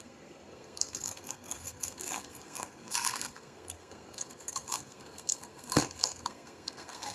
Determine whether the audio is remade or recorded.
remade